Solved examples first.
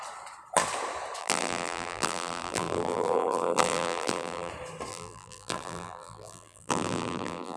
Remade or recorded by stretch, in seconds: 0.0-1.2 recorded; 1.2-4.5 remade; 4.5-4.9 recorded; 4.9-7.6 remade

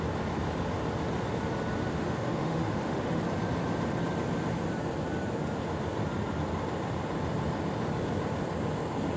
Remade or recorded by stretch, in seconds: 0.0-1.9 recorded; 1.9-3.2 remade; 3.2-9.2 recorded

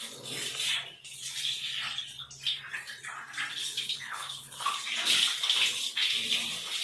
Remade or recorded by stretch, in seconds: 0.0-3.5 recorded; 3.5-4.7 remade; 4.7-6.8 recorded

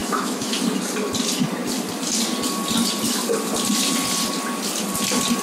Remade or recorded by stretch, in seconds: 0.0-0.6 remade; 0.6-5.4 recorded